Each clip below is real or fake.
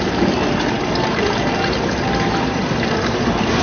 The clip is fake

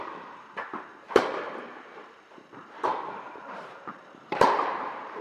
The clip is fake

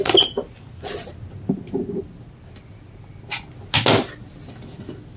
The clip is real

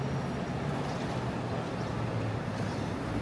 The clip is real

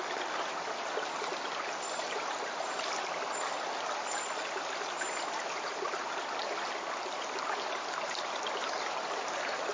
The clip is real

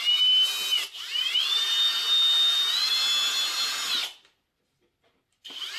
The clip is real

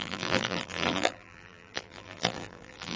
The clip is fake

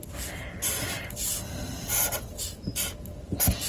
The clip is real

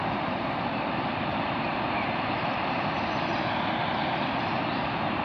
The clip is fake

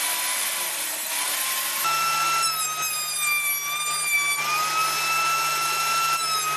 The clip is real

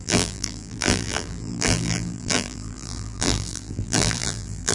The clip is fake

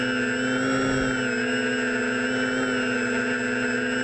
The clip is real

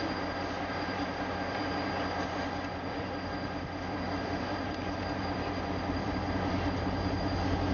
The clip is fake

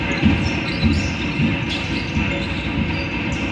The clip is real